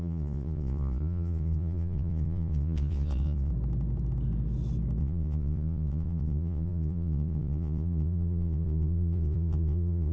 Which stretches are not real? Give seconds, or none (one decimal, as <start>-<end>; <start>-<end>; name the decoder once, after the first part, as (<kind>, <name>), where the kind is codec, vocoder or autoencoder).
0.0-3.5 (vocoder, Vocos); 5.0-10.1